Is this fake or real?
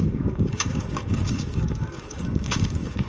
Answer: fake